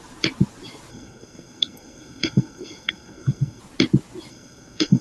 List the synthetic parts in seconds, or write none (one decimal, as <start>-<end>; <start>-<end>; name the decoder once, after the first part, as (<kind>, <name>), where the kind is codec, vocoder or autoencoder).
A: 0.9-3.6 (codec, SNAC); 4.3-5.0